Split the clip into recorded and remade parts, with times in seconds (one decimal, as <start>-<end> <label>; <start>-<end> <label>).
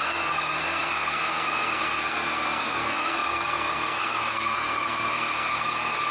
0.0-6.1 remade